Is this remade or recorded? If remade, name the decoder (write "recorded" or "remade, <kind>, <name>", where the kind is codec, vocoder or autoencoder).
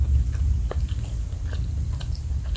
recorded